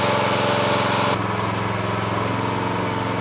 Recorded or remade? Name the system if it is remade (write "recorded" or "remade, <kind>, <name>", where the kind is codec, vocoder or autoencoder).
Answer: recorded